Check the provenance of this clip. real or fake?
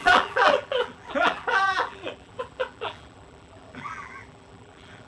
fake